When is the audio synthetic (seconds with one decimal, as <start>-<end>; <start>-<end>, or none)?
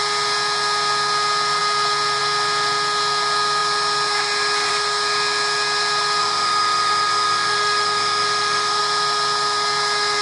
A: 6.2-8.8